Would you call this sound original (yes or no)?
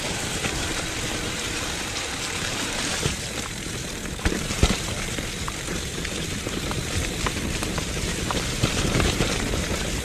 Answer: no